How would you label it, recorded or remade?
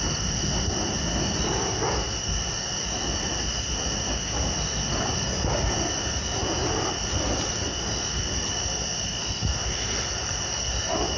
remade